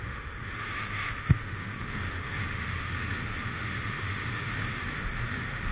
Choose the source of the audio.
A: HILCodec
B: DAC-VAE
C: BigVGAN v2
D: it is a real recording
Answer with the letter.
B